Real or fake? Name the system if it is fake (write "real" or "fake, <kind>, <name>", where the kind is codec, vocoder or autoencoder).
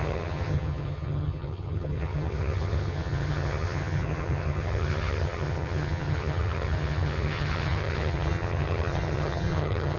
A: fake, vocoder, HiFi-GAN